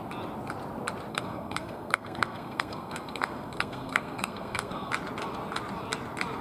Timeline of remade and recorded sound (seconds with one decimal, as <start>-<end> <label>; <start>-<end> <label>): 0.0-1.1 recorded; 1.1-4.9 remade; 4.9-6.4 recorded

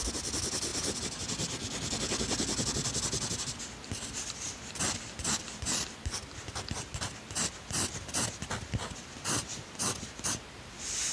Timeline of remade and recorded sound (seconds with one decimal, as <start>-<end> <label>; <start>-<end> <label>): 0.0-11.1 recorded

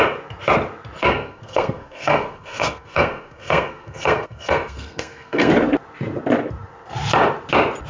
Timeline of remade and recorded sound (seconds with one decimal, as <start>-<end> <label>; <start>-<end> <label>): 0.0-1.0 recorded; 1.0-5.5 remade; 5.5-7.9 recorded

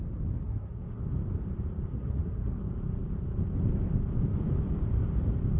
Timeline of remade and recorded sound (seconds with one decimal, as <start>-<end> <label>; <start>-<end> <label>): 0.0-0.4 recorded; 0.4-1.0 remade; 1.0-1.9 recorded; 1.9-2.6 remade; 2.6-5.6 recorded

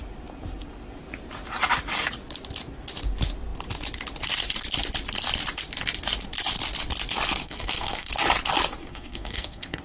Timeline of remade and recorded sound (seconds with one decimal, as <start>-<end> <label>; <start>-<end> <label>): 0.0-7.4 recorded; 7.4-8.1 remade; 8.1-8.9 recorded; 8.9-9.8 remade

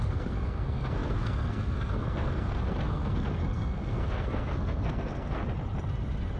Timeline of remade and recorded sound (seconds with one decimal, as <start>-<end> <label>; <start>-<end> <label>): 0.0-5.4 remade; 5.4-6.4 recorded